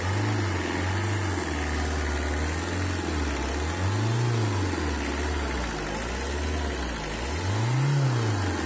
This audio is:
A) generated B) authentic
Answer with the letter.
B